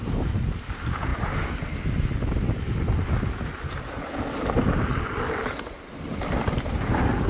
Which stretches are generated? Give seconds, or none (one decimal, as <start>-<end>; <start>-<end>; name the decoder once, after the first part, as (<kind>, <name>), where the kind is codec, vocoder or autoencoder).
none